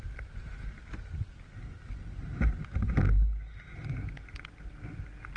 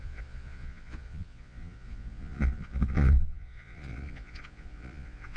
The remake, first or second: second